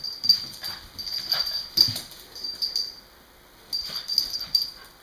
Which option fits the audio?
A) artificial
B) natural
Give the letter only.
B